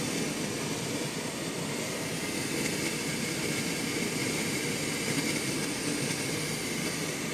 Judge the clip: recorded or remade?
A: recorded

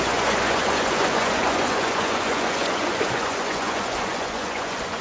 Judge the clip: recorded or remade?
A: remade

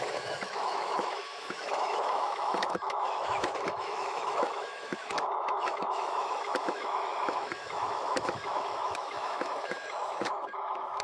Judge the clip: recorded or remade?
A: remade